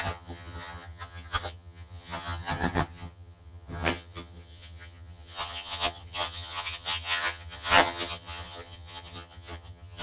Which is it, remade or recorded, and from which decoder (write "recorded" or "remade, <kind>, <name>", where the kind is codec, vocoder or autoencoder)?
remade, vocoder, HiFi-GAN